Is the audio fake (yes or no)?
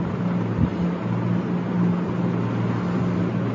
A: no